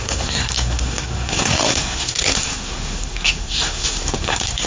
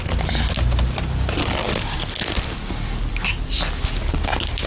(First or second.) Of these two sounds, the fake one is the first